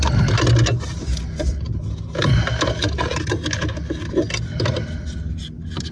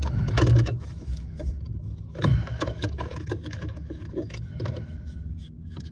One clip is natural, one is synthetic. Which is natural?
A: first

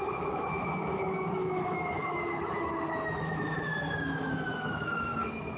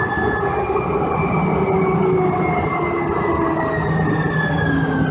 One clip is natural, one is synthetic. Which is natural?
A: second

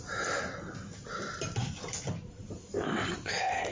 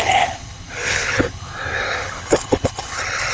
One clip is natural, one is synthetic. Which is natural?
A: first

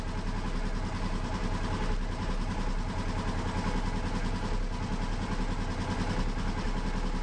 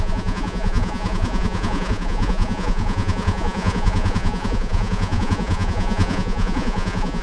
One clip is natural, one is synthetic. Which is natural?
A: first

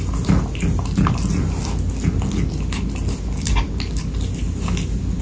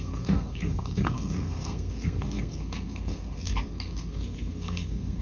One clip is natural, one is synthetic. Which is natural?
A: first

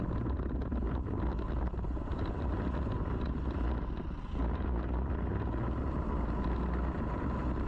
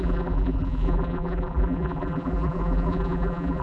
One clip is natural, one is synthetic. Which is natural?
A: first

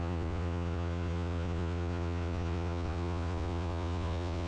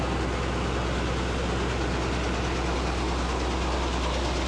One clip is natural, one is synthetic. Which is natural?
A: second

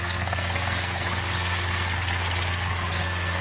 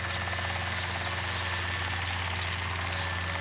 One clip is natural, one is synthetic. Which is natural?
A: second